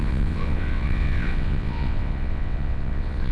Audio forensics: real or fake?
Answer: fake